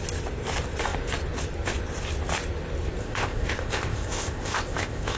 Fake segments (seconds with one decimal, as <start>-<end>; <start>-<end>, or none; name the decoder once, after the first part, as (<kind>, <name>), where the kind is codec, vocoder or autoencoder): 3.0-5.2 (codec, ZipCodec)